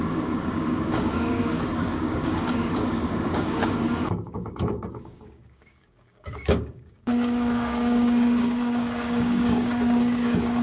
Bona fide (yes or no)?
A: no